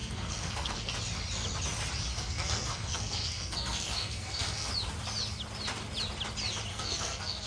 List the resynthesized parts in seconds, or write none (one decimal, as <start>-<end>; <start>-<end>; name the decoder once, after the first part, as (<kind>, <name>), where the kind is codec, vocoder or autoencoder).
0.0-0.9 (codec, SNAC); 2.1-4.7; 6.7-7.5